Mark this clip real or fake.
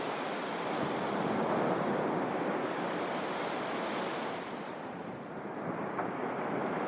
real